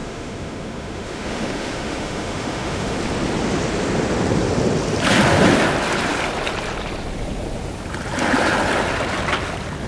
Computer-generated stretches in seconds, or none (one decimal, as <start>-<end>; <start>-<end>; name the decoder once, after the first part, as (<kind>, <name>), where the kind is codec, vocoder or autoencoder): 0.0-3.0 (autoencoder, DAC-VAE)